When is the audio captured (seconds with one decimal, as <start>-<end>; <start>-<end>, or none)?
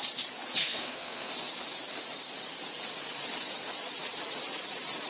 0.0-0.6; 1.3-5.1